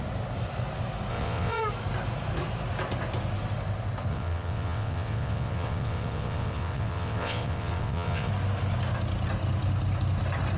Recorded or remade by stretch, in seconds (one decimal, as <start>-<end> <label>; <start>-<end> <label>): 0.0-1.1 recorded; 1.1-1.6 remade; 1.6-4.1 recorded; 4.1-8.3 remade; 8.3-10.6 recorded

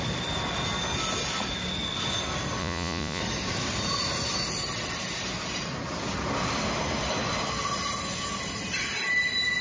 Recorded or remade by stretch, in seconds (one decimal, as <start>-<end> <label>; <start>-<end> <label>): 0.0-2.6 recorded; 2.6-3.2 remade; 3.2-9.6 recorded